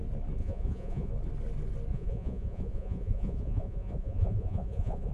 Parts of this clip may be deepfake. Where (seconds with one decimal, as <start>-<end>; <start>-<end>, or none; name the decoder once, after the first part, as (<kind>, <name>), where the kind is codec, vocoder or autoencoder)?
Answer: 0.4-1.1 (vocoder, Vocos); 1.9-5.1